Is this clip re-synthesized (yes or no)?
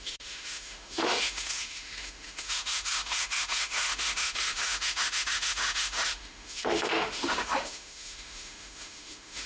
yes